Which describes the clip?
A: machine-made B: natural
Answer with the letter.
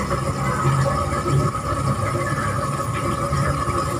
B